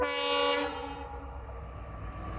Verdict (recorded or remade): recorded